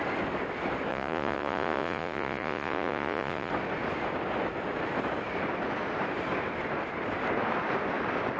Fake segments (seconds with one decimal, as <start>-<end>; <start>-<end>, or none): 0.9-3.5